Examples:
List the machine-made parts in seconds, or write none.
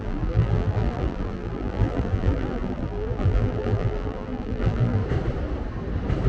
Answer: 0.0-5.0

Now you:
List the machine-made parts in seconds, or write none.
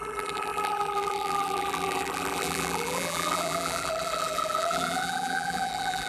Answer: 0.0-6.1